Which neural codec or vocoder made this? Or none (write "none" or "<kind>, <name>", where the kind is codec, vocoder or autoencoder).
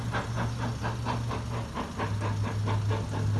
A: none